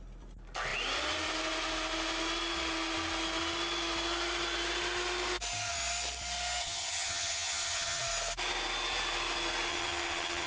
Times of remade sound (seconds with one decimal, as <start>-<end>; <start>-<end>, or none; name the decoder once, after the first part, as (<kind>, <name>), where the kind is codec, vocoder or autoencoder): 6.6-8.0 (vocoder, HiFi-GAN); 9.7-10.5